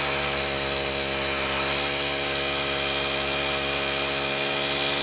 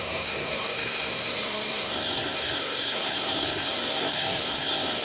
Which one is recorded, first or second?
first